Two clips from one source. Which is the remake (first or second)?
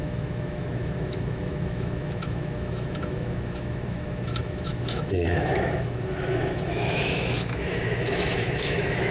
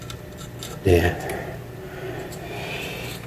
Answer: first